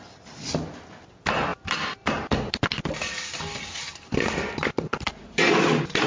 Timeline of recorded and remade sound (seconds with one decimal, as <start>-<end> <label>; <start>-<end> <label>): 0.0-1.5 recorded; 1.5-5.2 remade; 5.2-6.1 recorded